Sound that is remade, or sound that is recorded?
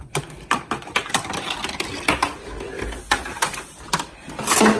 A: recorded